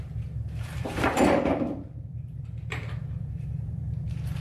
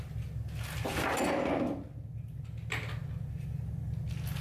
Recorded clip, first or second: second